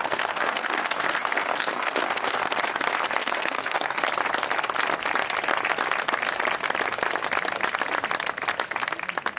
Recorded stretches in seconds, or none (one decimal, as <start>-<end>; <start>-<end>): 2.5-3.2; 4.0-9.4